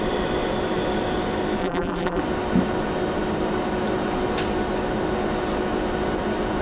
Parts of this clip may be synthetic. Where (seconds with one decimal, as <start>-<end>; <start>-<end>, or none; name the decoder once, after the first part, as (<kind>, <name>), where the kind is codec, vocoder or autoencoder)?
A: 1.6-2.2 (vocoder, BigVGAN v2)